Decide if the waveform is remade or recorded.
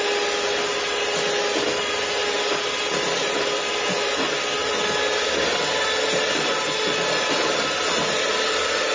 recorded